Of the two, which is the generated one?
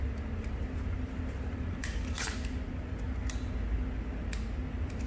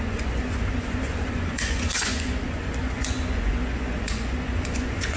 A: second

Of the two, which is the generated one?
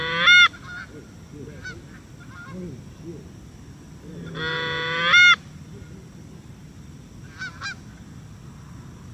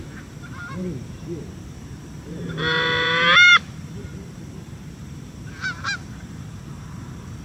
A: second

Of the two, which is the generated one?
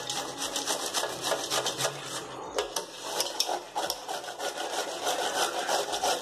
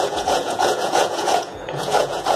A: second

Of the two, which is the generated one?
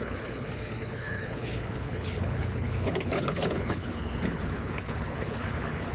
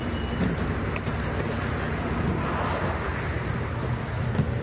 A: first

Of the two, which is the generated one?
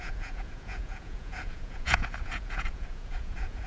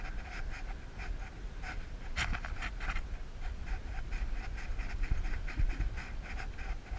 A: first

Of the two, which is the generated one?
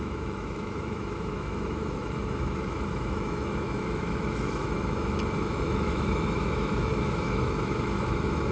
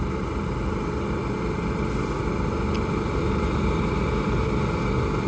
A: first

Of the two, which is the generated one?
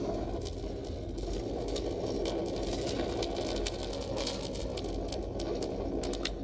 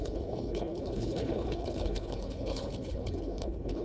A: second